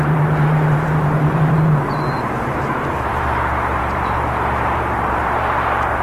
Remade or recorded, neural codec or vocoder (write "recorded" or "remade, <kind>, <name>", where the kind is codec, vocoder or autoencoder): remade, vocoder, BigVGAN v2